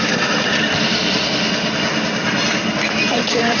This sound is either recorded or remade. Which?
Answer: recorded